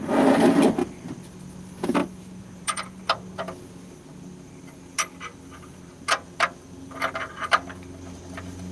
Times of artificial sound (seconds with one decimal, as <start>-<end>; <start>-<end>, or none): 0.8-1.3; 2.0-3.0